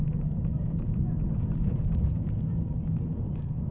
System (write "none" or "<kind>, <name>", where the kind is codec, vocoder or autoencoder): vocoder, Vocos